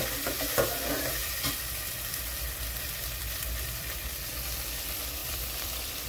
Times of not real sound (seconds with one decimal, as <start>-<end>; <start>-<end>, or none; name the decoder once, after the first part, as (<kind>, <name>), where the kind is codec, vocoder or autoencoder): 1.2-4.1 (vocoder, BigVGAN v2); 5.2-6.1